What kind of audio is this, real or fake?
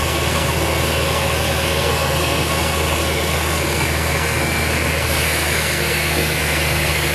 fake